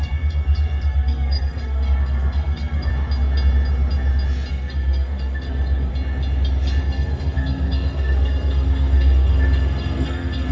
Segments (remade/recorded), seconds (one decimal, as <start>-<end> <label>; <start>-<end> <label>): 0.0-2.9 remade; 2.9-4.5 recorded; 4.5-5.9 remade; 5.9-6.8 recorded; 6.8-10.5 remade